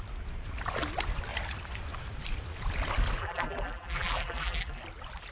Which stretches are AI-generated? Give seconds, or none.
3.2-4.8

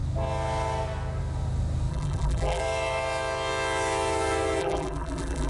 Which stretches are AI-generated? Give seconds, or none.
1.9-2.6; 4.6-5.5

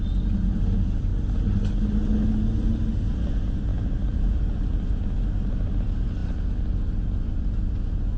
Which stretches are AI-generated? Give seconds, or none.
3.7-4.4

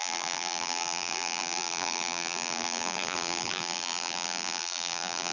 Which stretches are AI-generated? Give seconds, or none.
0.0-5.3

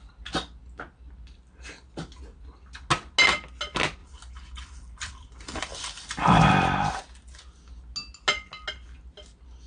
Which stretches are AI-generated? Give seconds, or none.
4.0-6.4

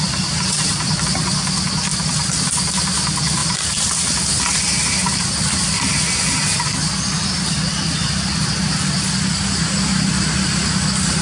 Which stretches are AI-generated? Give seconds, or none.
1.9-2.4; 3.4-3.9

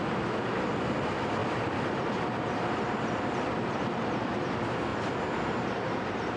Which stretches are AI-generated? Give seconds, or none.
1.4-4.3; 4.9-6.4